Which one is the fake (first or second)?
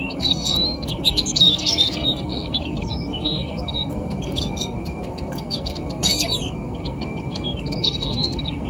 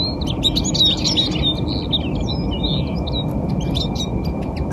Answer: first